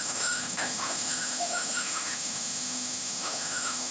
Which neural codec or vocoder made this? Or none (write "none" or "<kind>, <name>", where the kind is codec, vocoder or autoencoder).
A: autoencoder, DAC-VAE